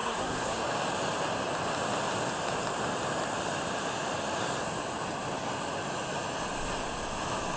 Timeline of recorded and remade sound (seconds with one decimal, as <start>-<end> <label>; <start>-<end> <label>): 0.0-0.6 remade; 0.6-7.6 recorded